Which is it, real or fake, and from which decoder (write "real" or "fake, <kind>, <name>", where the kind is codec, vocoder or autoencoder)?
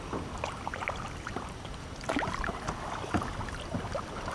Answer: real